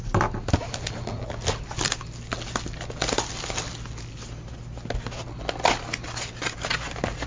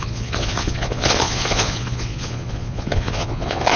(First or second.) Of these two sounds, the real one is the first